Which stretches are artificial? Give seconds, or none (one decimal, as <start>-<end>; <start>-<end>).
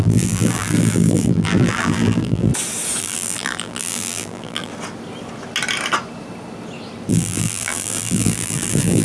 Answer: 0.0-2.5; 3.0-4.7; 7.1-9.0